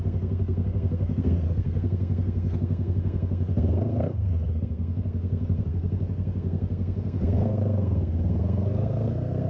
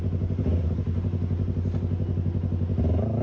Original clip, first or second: second